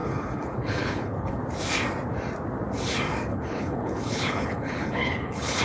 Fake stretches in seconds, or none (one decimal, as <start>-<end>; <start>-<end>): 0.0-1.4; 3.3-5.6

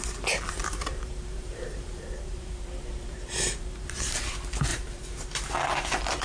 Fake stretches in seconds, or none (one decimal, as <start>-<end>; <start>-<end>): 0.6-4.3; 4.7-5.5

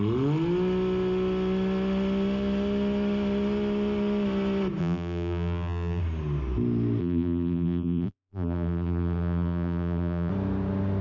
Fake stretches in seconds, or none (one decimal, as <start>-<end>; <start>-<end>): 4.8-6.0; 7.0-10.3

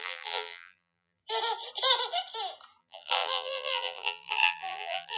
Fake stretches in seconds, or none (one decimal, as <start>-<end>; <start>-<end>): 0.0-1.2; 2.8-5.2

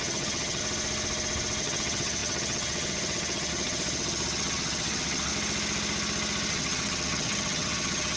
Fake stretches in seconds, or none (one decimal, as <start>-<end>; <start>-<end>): 0.0-0.6; 1.6-5.3; 6.5-8.2

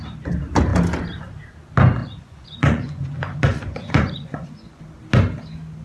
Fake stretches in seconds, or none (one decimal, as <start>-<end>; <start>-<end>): 2.0-4.8

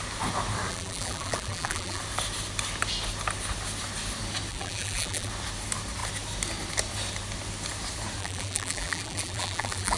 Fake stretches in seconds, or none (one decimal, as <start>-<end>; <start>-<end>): 0.7-2.0; 4.5-5.3; 8.2-10.0